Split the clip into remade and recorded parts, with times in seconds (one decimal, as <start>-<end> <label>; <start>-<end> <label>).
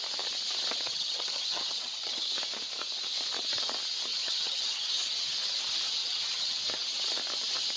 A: 0.0-0.9 recorded; 0.9-2.3 remade; 2.3-4.1 recorded; 4.1-4.9 remade; 4.9-6.0 recorded; 6.0-6.6 remade; 6.6-7.8 recorded